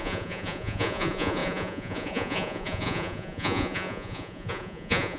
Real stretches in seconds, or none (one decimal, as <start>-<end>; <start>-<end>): none

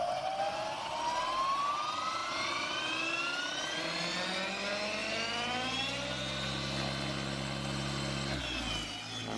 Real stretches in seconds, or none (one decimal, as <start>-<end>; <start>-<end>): 0.0-9.4

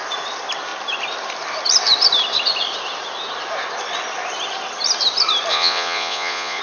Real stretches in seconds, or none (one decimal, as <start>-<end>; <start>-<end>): 0.0-5.5

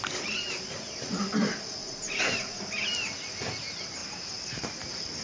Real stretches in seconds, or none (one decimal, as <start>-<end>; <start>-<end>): 0.0-1.8; 2.6-5.2

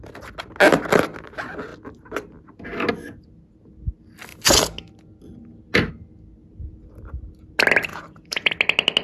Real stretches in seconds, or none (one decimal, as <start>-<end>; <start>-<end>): 0.0-7.9; 8.5-9.0

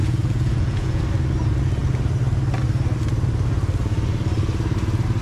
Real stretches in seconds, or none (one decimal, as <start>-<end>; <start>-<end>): 1.0-5.2

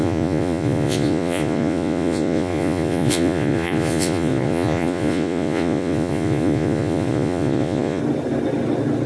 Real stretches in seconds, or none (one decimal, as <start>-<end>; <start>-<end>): 8.0-9.1

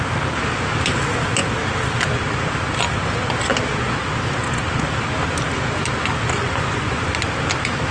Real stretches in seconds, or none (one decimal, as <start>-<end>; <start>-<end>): 0.0-6.4; 7.0-7.9